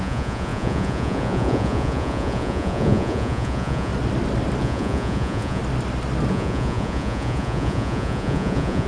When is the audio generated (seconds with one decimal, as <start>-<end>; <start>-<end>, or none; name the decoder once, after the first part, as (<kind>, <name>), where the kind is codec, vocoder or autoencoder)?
0.0-3.9 (vocoder, Vocos); 4.6-5.6; 6.3-8.9